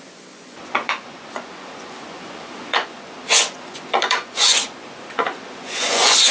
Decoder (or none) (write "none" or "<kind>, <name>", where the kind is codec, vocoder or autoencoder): vocoder, Vocos